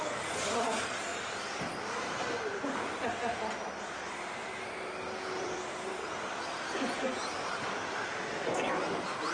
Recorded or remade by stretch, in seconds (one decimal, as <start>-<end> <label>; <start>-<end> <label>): 0.0-1.1 recorded; 1.1-6.0 remade; 6.0-9.3 recorded